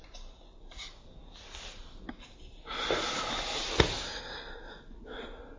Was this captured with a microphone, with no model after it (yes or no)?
yes